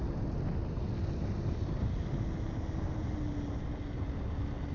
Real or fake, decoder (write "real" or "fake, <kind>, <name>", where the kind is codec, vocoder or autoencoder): real